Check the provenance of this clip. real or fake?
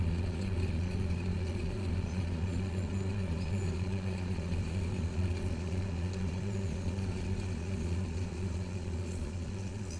fake